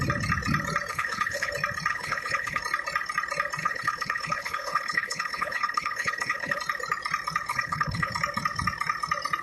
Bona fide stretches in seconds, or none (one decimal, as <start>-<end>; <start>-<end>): 0.0-0.9; 1.5-1.9; 2.6-3.6; 6.6-7.5; 8.1-9.4